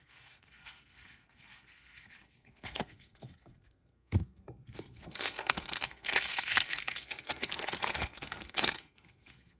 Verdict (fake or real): fake